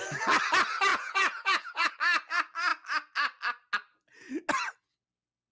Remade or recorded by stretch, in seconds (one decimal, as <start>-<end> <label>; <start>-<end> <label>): 0.0-0.9 recorded; 0.9-1.9 remade; 1.9-5.5 recorded

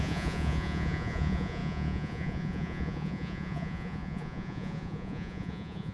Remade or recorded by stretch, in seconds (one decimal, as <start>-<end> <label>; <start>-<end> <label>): 0.0-5.9 remade

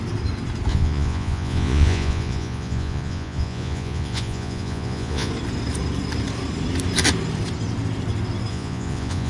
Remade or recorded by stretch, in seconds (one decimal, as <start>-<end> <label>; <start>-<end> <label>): 0.0-0.7 recorded; 0.7-5.3 remade; 5.3-8.5 recorded; 8.5-9.3 remade

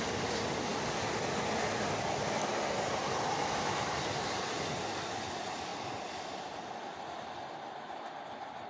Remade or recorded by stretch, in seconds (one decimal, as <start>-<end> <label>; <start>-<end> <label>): 0.0-8.7 recorded